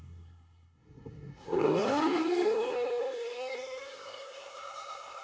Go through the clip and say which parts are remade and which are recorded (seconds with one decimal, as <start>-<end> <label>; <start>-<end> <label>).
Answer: 0.0-5.2 remade